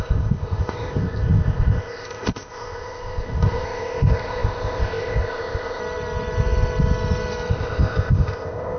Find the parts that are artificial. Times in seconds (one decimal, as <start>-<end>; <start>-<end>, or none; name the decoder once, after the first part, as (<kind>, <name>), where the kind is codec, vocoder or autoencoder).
0.0-5.8 (codec, ZipCodec); 7.5-8.8

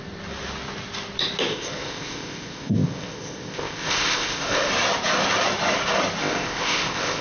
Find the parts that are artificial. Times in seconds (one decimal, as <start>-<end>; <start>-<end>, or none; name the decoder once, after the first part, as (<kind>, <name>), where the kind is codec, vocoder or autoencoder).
1.5-4.7 (codec, ZipCodec); 6.2-7.2

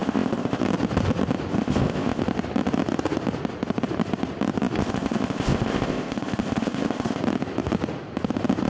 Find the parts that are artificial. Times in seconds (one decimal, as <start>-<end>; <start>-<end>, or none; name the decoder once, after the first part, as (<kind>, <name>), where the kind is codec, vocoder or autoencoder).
0.0-0.6 (codec, ZipCodec); 1.5-2.2; 4.8-7.2

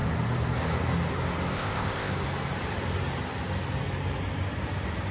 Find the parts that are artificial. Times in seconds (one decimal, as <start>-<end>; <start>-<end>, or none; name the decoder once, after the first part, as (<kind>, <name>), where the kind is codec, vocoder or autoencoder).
1.5-2.1 (codec, ZipCodec)

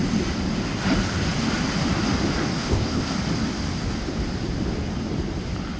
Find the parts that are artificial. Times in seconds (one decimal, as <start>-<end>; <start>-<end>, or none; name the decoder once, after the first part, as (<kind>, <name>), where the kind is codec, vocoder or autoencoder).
2.6-3.1 (codec, ZipCodec)

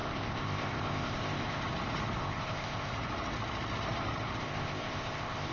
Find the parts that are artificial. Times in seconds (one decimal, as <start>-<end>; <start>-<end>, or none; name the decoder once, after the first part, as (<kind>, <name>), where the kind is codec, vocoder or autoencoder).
0.0-1.6 (codec, ZipCodec); 2.2-2.9; 4.4-5.5

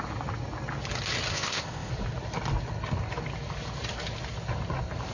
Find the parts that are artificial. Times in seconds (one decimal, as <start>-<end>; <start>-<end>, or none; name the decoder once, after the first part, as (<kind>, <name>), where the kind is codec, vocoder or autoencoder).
1.3-1.9 (codec, ZipCodec)

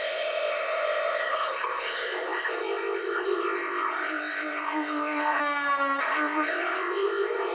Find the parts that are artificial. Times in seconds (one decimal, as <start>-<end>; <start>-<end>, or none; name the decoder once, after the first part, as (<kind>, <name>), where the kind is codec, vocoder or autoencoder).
0.0-5.4 (codec, ZipCodec); 6.0-7.5